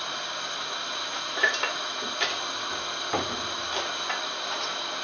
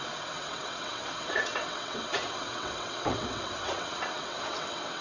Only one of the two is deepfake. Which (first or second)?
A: second